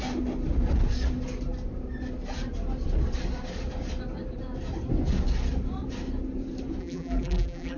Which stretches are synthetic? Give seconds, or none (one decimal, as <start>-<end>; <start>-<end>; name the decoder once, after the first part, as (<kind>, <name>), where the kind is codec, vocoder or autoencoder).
6.8-7.8 (vocoder, BigVGAN v2)